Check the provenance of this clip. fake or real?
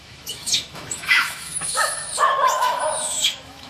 fake